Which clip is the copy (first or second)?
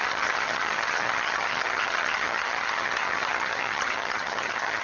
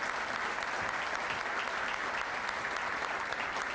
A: first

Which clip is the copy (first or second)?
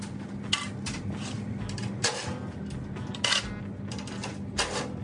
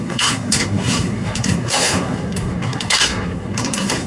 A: second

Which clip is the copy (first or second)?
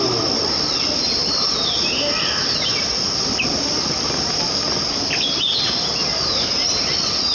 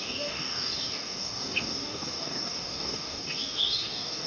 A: second